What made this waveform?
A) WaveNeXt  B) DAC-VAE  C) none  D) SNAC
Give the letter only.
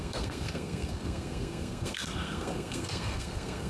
D